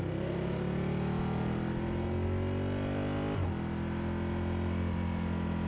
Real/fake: real